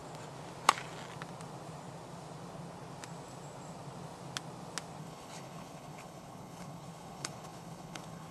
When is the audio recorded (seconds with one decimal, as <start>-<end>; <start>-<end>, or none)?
0.0-5.0